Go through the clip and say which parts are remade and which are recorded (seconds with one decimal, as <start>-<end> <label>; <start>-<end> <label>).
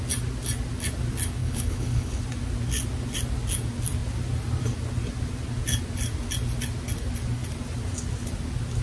0.0-1.4 recorded; 1.4-2.2 remade; 2.2-8.8 recorded